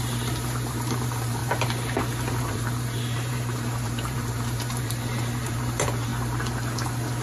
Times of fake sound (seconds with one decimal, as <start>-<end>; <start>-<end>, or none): 0.0-1.4; 2.5-6.1